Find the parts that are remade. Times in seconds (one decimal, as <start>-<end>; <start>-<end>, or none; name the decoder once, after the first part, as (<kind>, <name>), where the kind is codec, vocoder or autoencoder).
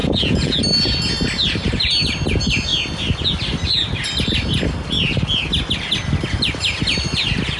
0.0-0.6 (vocoder, Vocos)